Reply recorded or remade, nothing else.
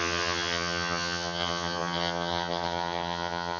remade